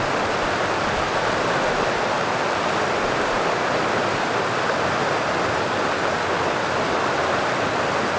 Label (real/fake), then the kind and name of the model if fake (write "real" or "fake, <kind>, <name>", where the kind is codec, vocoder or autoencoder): real